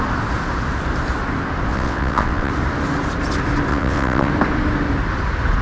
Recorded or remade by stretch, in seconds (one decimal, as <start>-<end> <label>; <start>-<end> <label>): 0.0-1.7 recorded; 1.7-2.5 remade; 2.5-3.7 recorded; 3.7-4.3 remade; 4.3-5.6 recorded